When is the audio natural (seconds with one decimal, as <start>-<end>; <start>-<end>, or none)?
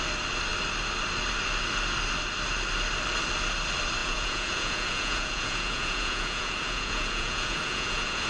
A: 0.0-4.0